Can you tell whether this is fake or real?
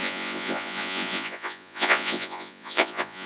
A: fake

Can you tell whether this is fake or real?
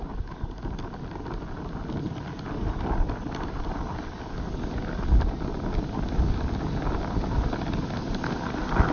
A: real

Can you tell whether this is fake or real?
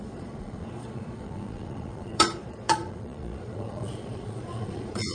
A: fake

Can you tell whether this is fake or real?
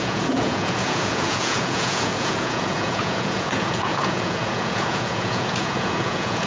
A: fake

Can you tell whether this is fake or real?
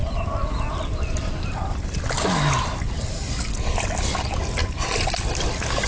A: real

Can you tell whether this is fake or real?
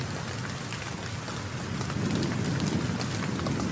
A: real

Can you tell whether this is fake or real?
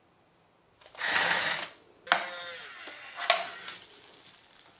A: real